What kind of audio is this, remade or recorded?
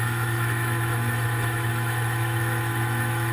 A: remade